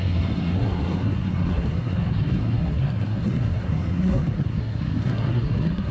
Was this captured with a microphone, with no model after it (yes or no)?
no